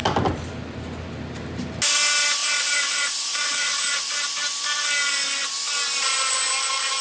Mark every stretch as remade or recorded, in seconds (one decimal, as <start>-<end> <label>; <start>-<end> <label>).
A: 0.0-2.4 recorded; 2.4-4.1 remade; 4.1-7.0 recorded